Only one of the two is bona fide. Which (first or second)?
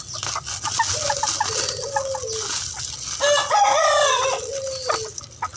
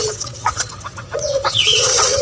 first